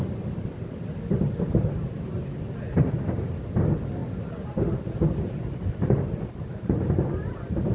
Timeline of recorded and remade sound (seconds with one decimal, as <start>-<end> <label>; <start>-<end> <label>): 0.0-7.7 recorded